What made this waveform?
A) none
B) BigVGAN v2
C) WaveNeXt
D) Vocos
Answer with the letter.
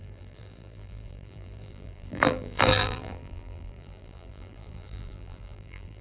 B